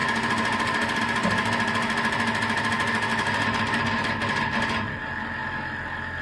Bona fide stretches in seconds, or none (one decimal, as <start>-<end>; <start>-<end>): 1.0-3.1; 4.2-6.2